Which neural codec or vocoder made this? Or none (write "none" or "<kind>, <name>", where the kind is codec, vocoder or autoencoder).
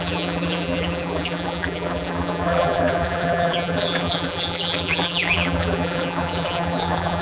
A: vocoder, BigVGAN v2